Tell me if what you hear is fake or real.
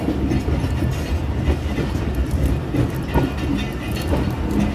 real